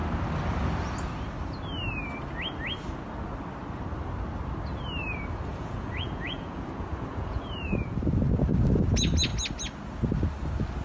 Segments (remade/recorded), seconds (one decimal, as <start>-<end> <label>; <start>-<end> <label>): 0.0-5.5 recorded; 5.5-8.0 remade; 8.0-10.8 recorded